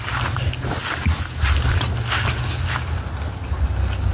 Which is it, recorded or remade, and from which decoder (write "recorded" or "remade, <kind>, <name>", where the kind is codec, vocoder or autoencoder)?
recorded